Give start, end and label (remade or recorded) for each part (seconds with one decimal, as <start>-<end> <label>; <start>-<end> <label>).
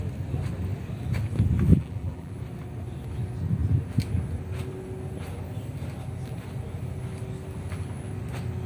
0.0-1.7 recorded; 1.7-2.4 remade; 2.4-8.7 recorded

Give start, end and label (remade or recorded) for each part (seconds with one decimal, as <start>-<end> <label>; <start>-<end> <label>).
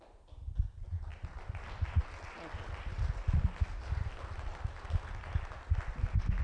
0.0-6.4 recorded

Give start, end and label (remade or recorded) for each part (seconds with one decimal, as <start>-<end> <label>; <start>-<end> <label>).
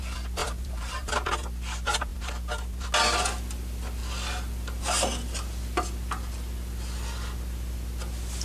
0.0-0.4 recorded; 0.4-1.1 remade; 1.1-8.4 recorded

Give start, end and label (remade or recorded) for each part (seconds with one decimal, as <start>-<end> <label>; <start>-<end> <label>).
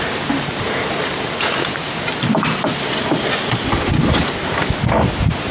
0.0-2.7 remade; 2.7-4.1 recorded; 4.1-5.5 remade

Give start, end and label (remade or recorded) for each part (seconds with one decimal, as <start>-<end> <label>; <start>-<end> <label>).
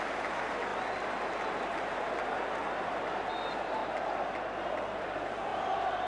0.0-0.7 remade; 0.7-1.5 recorded; 1.5-3.8 remade; 3.8-4.6 recorded; 4.6-6.1 remade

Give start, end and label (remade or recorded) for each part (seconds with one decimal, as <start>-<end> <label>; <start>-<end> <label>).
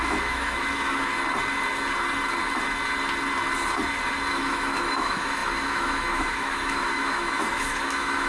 0.0-1.1 remade; 1.1-4.3 recorded; 4.3-8.3 remade